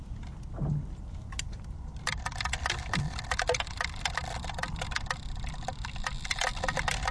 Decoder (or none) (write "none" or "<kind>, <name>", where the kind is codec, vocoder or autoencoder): none